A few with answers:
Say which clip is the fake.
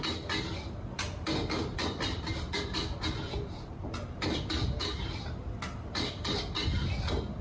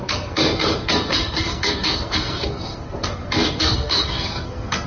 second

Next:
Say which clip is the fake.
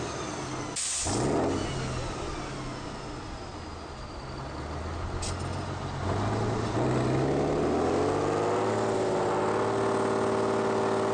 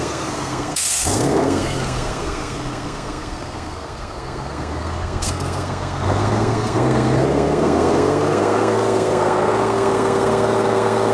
second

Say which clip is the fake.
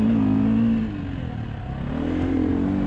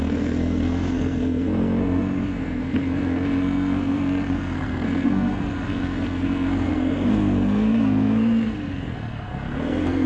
second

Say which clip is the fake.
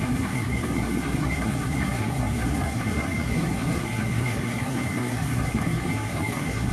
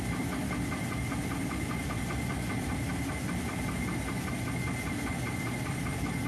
first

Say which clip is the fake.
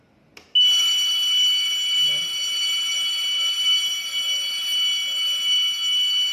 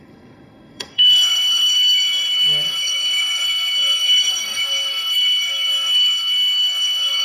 second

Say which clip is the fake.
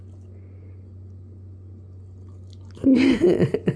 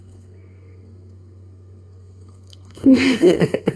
second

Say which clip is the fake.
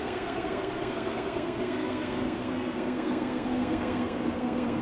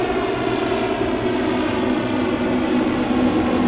first